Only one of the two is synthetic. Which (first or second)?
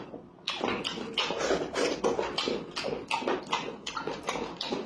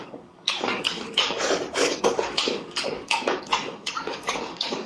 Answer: second